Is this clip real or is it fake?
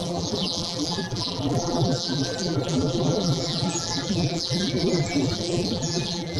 fake